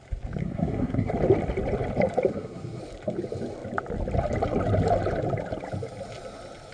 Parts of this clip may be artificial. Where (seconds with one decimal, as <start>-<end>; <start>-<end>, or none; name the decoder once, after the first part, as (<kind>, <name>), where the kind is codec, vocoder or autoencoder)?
0.4-1.1 (codec, SNAC); 2.3-2.8